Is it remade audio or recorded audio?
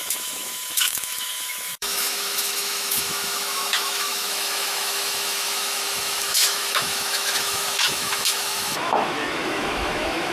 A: remade